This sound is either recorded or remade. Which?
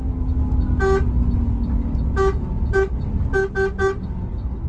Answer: recorded